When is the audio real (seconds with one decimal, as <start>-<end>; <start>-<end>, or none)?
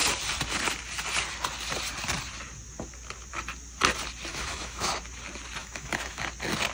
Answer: 0.0-4.3; 4.9-5.6; 6.2-6.7